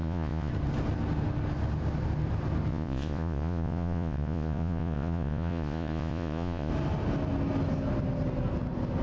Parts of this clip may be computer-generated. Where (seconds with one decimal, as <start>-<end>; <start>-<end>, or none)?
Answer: 0.0-0.5; 2.7-6.7